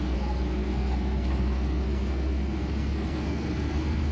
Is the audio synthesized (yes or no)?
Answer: yes